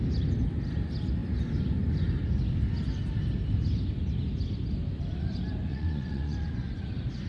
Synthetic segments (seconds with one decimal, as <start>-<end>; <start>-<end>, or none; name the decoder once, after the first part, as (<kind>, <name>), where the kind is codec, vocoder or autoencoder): 5.7-6.8 (vocoder, Vocos)